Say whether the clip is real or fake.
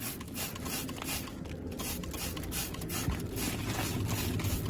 real